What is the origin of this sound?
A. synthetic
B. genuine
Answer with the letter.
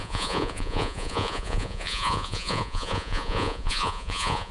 A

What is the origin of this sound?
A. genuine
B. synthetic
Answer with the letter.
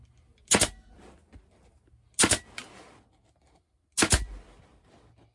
A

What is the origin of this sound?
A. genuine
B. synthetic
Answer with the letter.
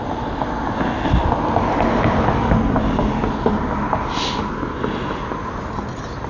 A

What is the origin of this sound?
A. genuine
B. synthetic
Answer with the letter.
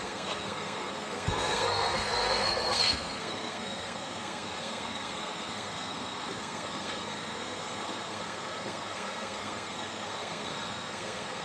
B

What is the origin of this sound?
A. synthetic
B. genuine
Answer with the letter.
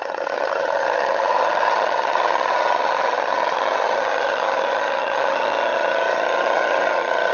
A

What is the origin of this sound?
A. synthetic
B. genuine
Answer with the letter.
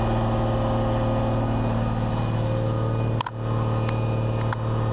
B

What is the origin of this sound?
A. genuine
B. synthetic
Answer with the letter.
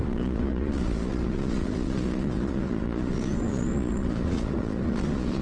B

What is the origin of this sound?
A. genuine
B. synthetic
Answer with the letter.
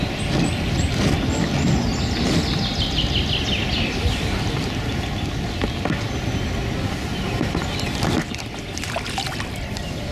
A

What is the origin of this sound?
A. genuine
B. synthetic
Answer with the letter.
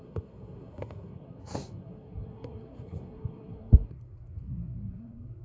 B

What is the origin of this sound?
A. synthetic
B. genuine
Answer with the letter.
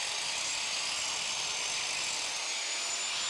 B